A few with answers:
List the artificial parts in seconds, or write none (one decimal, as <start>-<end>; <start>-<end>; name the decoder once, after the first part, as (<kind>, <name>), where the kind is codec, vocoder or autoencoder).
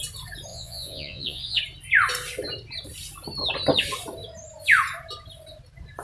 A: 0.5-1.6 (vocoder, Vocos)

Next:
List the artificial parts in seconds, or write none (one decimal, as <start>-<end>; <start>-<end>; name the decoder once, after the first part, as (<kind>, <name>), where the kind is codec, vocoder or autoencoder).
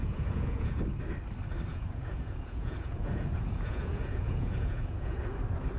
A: 0.0-0.8 (vocoder, Vocos); 1.7-5.2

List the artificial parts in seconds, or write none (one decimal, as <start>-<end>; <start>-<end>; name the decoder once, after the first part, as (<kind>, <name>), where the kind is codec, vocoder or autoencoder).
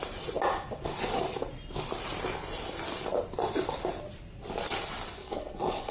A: 5.2-5.9 (codec, HILCodec)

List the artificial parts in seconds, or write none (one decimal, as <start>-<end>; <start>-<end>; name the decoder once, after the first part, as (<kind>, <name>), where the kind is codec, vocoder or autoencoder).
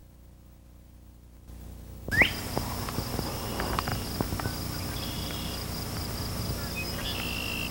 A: none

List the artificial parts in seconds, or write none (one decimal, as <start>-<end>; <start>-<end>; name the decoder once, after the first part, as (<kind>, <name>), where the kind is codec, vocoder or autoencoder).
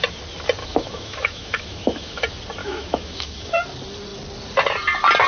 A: 0.6-2.2 (autoencoder, DAC-VAE); 2.6-3.5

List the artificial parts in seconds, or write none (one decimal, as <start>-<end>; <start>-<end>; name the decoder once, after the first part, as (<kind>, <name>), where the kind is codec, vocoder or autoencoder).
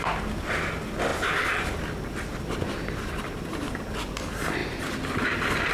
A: none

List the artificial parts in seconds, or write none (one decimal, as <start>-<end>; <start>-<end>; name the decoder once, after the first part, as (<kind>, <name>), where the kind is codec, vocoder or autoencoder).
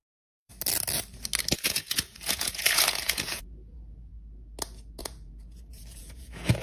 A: 0.0-0.5 (vocoder, Vocos); 1.5-4.1; 5.0-6.6